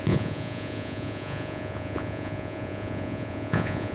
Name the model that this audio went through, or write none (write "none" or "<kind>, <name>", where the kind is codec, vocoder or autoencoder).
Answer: vocoder, Vocos